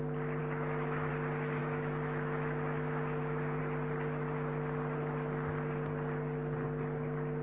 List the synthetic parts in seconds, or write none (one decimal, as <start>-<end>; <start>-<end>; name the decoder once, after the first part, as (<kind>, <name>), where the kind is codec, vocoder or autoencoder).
0.4-1.1 (autoencoder, DAC-VAE); 1.6-3.6